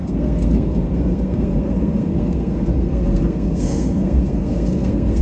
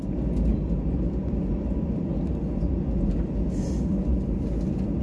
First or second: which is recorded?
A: second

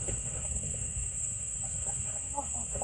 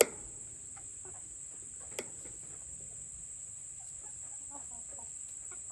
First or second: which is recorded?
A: second